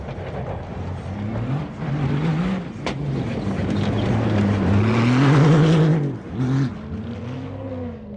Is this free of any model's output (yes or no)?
yes